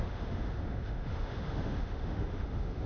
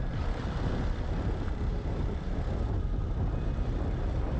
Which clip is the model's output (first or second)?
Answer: first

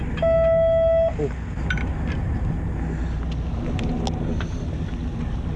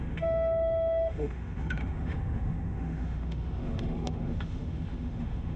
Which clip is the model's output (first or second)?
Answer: second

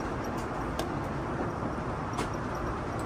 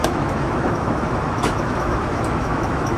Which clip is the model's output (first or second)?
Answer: second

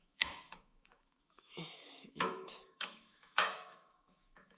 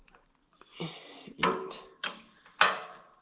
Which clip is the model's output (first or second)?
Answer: first